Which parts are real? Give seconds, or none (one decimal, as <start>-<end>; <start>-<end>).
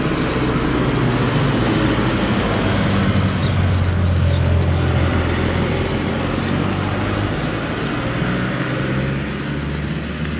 0.0-2.1; 3.0-10.4